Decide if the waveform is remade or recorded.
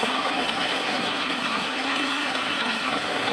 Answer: remade